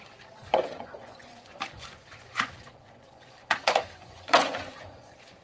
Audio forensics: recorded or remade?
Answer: remade